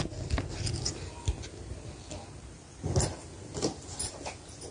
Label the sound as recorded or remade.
recorded